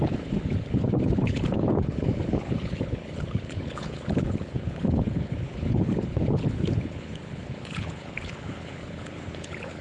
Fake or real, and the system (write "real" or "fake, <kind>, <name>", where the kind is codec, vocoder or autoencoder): fake, codec, HILCodec